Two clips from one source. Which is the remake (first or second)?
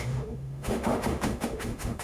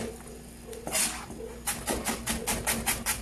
first